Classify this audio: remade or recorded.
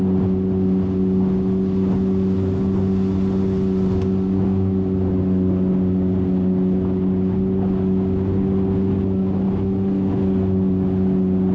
recorded